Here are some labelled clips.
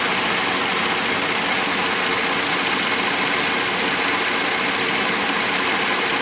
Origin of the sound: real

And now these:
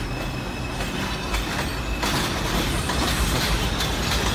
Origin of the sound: real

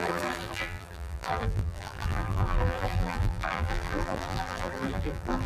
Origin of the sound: fake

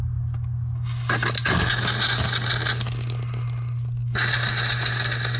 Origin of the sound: real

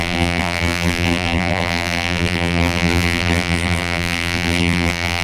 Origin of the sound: fake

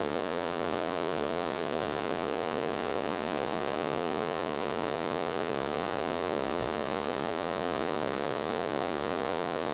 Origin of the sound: fake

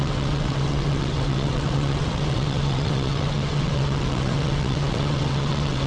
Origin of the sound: fake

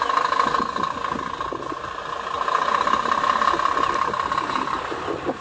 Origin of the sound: real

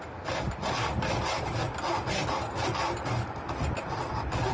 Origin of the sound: real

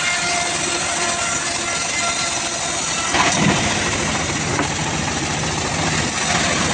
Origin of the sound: real